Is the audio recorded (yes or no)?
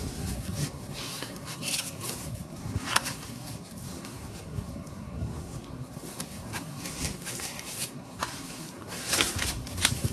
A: no